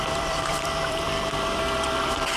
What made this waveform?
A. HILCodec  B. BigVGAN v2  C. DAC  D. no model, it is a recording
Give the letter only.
B